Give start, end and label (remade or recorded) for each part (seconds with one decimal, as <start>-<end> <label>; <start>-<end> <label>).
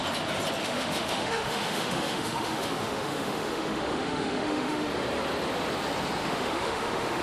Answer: 0.0-0.6 recorded; 0.6-4.9 remade; 4.9-6.2 recorded; 6.2-7.2 remade